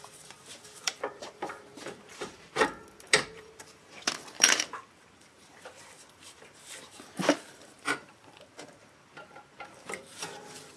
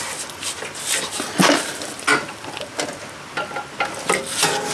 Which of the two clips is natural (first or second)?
second